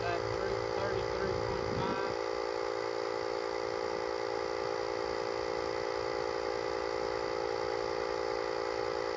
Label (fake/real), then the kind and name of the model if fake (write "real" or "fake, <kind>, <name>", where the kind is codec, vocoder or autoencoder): real